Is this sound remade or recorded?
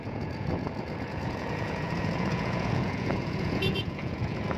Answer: remade